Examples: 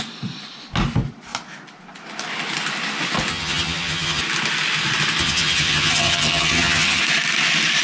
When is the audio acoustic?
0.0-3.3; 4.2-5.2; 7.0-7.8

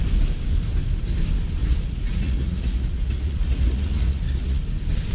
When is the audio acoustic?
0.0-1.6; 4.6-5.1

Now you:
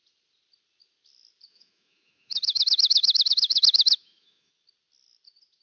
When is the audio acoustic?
0.0-1.5; 4.5-5.6